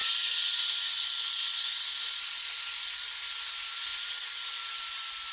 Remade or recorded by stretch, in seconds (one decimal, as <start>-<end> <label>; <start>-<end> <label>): 0.0-5.3 recorded